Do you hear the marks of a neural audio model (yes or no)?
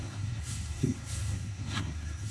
yes